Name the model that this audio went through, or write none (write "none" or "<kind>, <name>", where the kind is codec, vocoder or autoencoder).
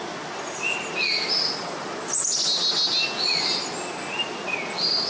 none